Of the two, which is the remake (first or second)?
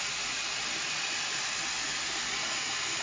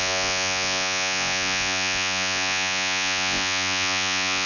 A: second